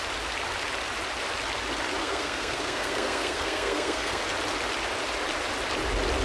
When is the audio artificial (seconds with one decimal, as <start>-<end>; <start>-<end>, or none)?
2.0-4.2